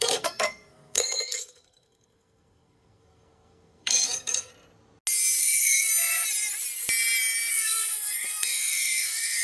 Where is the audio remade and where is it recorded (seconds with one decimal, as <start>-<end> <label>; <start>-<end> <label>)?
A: 0.0-4.5 remade; 4.5-5.4 recorded; 5.4-5.9 remade; 5.9-7.5 recorded; 7.5-9.4 remade